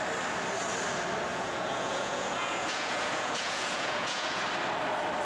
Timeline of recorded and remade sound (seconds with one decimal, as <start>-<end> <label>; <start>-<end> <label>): 0.0-1.3 recorded; 1.3-4.4 remade; 4.4-5.2 recorded